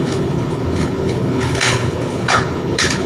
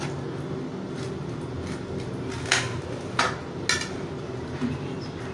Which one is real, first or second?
second